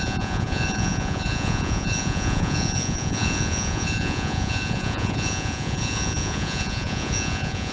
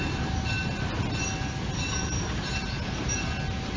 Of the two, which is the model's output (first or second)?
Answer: first